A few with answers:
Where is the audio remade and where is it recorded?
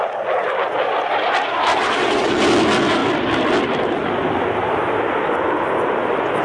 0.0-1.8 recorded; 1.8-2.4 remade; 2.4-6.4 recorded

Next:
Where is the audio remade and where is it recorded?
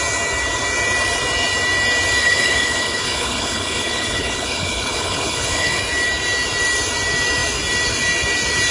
0.0-2.2 recorded; 2.2-5.8 remade; 5.8-8.7 recorded